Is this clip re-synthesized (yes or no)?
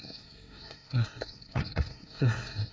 yes